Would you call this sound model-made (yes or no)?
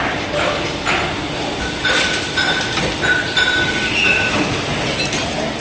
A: no